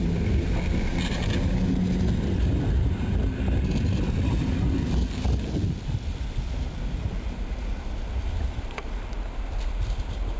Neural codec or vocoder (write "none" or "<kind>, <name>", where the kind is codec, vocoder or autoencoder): none